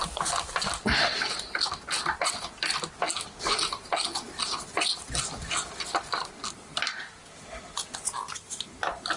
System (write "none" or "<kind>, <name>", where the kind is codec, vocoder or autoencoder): none